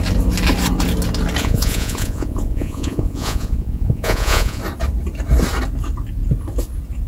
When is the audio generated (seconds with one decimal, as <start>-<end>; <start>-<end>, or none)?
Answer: 1.4-4.6